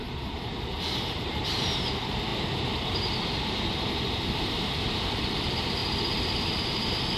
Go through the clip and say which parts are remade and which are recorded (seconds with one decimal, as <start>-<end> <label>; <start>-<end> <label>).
0.0-5.8 remade; 5.8-6.7 recorded; 6.7-7.2 remade